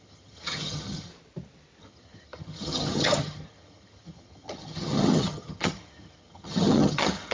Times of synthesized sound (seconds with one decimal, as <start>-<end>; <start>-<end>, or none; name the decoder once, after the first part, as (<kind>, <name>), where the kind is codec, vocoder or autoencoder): 0.0-1.1 (vocoder, HiFi-GAN); 1.8-7.3